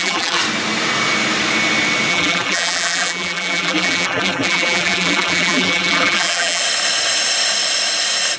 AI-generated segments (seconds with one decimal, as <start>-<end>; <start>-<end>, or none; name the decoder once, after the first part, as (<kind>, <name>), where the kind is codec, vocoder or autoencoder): 0.0-0.4 (vocoder, BigVGAN v2); 2.1-6.6